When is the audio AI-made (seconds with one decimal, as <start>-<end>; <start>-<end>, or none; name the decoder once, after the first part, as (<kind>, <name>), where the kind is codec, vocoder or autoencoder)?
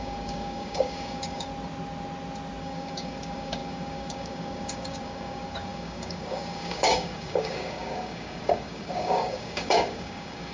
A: 0.0-1.5 (codec, DAC); 2.6-10.5